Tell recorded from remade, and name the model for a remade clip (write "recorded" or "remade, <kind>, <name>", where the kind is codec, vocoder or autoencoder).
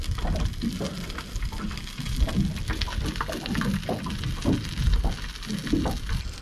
recorded